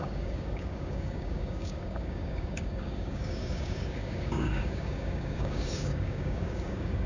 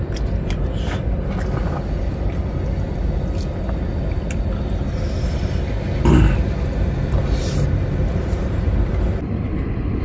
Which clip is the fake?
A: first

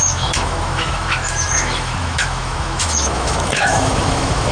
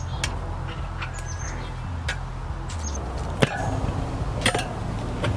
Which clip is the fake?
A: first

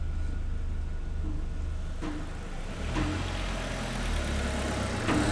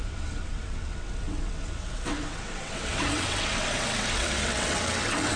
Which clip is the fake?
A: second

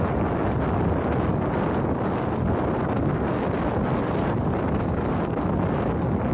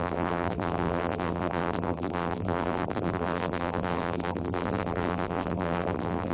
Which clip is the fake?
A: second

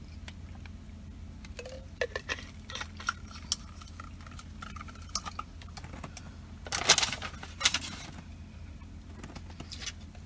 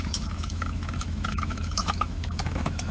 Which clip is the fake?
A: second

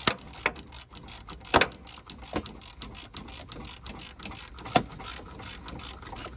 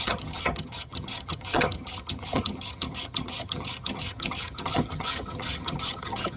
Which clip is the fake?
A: second